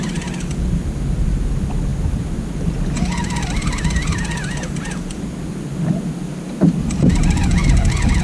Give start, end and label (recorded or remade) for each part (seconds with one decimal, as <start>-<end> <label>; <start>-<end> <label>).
0.0-8.2 recorded